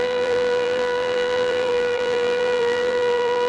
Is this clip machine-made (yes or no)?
yes